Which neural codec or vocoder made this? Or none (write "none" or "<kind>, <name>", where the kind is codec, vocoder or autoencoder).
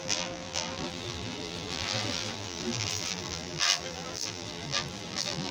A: vocoder, BigVGAN v2